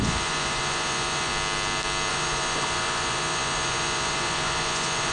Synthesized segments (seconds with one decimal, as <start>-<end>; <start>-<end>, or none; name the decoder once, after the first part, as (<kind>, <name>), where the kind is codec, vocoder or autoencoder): 0.0-1.3 (vocoder, Vocos); 2.1-5.1